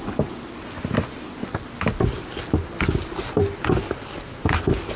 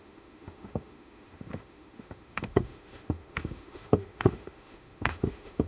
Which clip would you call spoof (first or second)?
second